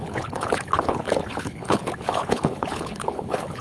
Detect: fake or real fake